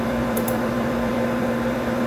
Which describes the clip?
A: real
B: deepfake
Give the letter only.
B